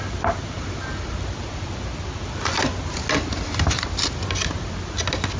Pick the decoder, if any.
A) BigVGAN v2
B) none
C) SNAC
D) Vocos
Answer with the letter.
B